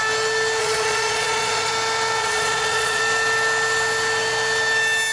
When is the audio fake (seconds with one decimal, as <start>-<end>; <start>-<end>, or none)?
0.6-1.7; 2.2-3.0